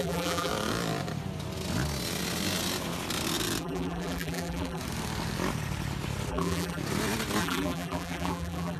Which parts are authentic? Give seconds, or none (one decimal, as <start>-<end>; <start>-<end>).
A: 0.5-3.6; 4.8-6.3; 6.8-7.4